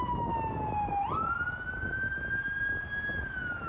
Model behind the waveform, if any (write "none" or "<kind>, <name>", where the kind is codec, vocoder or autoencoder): none